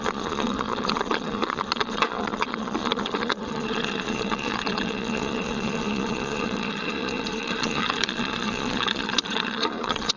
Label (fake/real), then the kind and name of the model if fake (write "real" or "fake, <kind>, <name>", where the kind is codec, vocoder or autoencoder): fake, vocoder, Vocos